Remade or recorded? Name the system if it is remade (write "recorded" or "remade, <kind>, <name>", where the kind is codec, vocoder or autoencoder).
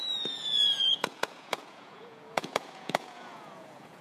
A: remade, vocoder, Vocos